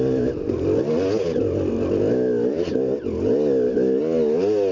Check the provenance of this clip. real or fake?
real